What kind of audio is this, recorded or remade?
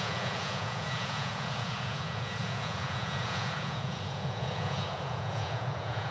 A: remade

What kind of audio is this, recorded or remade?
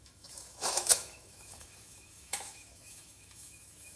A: remade